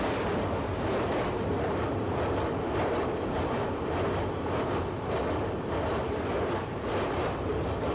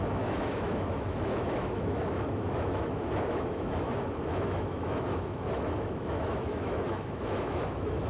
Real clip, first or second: first